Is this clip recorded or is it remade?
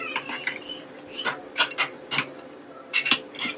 recorded